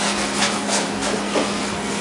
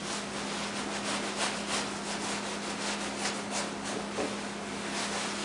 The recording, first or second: second